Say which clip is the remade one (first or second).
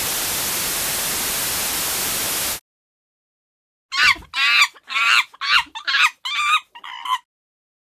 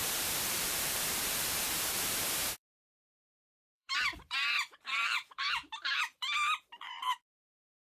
second